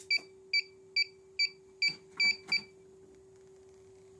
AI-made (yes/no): no